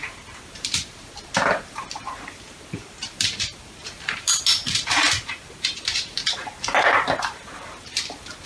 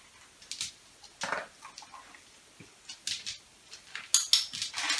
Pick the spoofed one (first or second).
first